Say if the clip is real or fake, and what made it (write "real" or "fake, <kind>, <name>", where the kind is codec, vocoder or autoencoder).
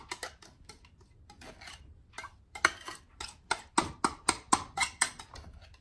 real